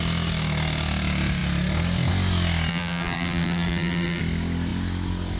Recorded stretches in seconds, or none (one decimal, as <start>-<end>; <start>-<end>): 0.0-2.7; 4.2-5.4